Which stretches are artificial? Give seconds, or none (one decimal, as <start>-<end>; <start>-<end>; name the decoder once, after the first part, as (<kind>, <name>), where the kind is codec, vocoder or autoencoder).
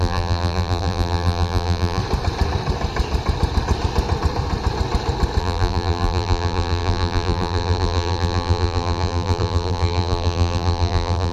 0.0-2.0 (vocoder, BigVGAN v2); 5.4-11.3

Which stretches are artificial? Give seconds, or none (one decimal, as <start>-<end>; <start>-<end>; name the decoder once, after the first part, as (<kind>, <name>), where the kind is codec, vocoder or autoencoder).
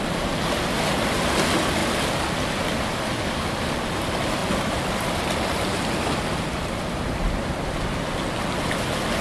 0.0-9.2 (vocoder, BigVGAN v2)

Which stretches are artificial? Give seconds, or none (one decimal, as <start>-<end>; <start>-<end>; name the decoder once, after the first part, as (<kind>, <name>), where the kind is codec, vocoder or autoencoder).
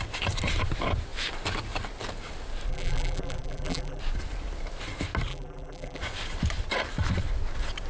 2.7-4.0 (vocoder, BigVGAN v2); 5.3-6.0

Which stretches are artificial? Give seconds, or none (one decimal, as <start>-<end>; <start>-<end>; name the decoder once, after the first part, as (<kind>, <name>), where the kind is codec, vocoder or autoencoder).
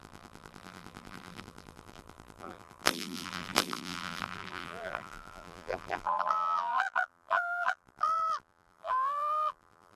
0.0-10.0 (vocoder, BigVGAN v2)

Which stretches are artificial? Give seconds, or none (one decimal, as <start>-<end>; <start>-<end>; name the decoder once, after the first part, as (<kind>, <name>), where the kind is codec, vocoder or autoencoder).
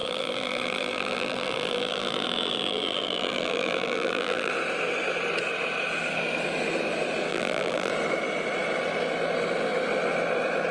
0.0-4.5 (vocoder, BigVGAN v2); 7.3-7.9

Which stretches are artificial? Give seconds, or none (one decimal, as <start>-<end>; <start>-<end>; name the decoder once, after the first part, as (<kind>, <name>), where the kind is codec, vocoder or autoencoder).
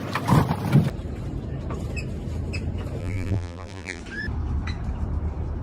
3.0-4.0 (vocoder, BigVGAN v2)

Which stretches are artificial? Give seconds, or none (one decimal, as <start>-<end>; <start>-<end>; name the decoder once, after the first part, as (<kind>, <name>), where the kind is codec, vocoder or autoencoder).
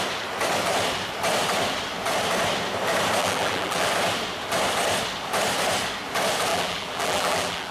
3.2-3.9 (vocoder, BigVGAN v2); 6.5-7.7